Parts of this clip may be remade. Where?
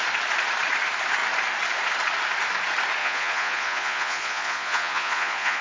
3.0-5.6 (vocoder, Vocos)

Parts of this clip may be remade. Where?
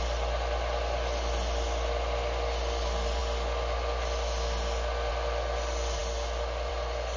none